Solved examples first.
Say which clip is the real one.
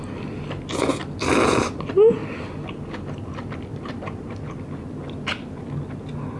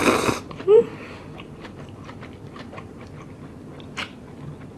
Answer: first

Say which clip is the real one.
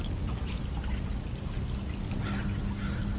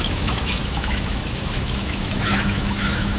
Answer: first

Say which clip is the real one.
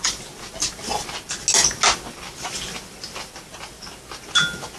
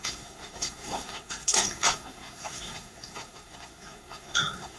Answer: first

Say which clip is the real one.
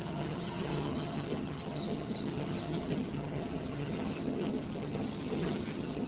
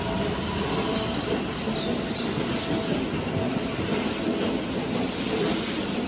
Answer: second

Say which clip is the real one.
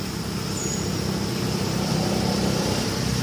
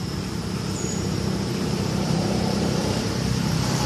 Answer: first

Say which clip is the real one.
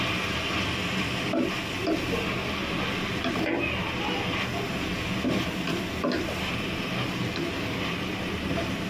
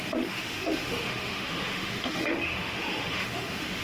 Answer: first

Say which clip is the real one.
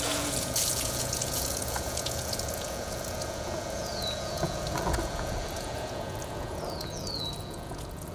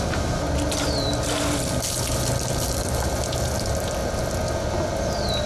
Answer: second